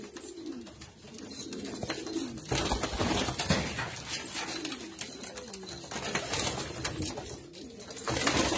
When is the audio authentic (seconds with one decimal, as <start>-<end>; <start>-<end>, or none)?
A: 0.0-8.6